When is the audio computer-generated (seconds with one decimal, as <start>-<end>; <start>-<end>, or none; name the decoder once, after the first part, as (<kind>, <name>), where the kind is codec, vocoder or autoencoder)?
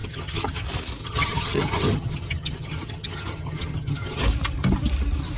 0.0-0.6 (vocoder, HiFi-GAN); 1.0-4.2